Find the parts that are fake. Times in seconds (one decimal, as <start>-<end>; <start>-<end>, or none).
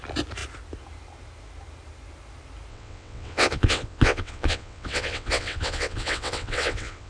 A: 2.7-7.1